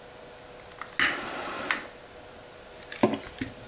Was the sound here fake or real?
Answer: real